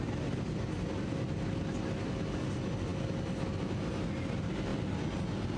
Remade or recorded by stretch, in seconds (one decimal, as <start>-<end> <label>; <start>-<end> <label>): 0.0-5.6 recorded